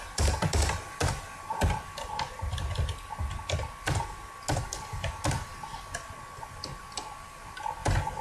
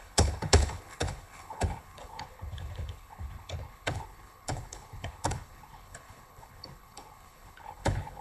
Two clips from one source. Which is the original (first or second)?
first